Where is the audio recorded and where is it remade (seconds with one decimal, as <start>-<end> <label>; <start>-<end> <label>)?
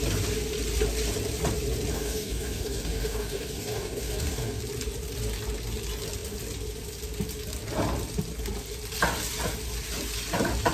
0.0-1.9 recorded; 1.9-4.6 remade; 4.6-10.7 recorded